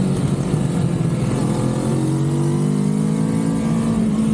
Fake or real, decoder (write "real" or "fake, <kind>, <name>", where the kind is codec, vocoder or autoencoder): real